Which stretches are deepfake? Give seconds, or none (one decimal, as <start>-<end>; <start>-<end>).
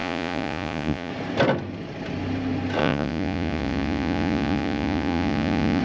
0.0-1.1; 2.8-5.8